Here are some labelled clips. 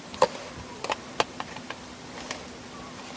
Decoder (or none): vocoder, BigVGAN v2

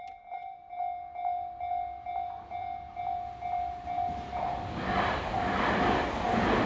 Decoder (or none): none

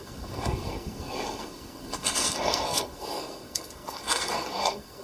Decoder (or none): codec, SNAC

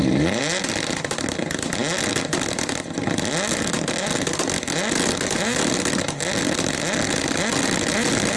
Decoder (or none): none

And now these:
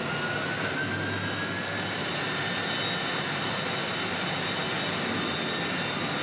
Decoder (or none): none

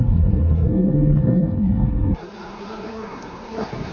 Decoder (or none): codec, SNAC